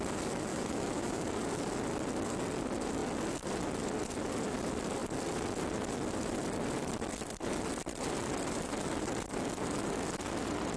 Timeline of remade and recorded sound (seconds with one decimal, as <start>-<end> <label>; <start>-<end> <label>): 0.0-0.5 recorded; 0.5-1.3 remade; 1.3-10.8 recorded